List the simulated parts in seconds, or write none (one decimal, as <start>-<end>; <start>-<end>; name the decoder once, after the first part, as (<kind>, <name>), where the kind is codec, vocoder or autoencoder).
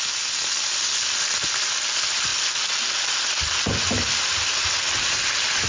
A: none